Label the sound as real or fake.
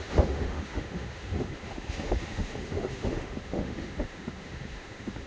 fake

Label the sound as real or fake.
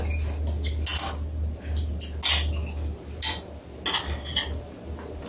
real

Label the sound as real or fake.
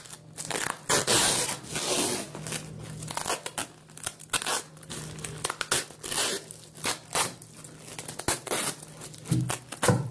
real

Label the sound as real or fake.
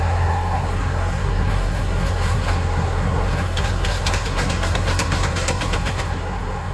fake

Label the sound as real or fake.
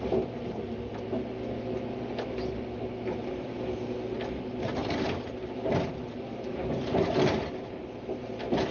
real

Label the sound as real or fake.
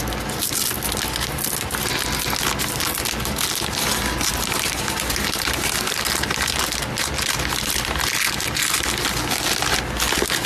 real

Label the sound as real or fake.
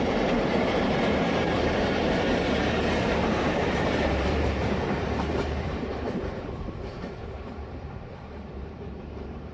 fake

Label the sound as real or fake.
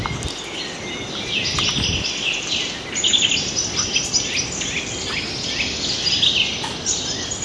real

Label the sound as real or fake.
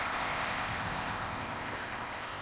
fake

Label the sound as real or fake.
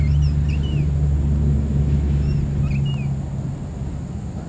real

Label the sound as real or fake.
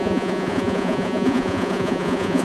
fake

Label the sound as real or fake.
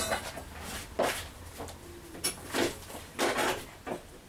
real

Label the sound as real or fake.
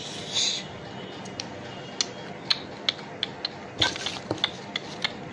real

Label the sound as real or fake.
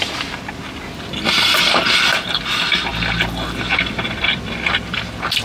fake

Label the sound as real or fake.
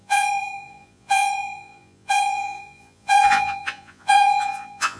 fake